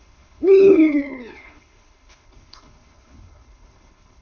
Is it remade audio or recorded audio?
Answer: remade